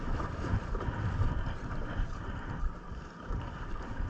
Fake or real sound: fake